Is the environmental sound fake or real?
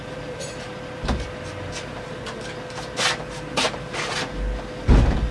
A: real